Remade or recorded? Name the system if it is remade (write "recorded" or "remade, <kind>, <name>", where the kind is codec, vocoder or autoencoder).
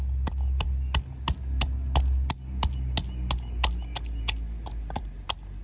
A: recorded